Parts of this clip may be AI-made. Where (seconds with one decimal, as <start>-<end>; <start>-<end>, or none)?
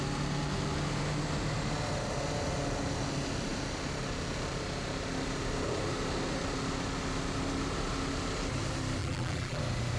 9.0-9.6